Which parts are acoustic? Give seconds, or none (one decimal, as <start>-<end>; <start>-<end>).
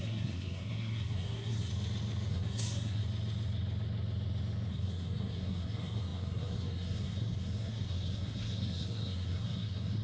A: 1.7-2.3; 3.0-4.7